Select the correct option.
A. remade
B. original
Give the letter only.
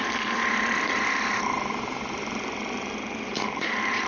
A